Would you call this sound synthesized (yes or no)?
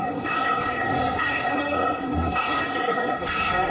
yes